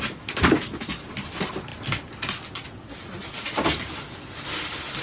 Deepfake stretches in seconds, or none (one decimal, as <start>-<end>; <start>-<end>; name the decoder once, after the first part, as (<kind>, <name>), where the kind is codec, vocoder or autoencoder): none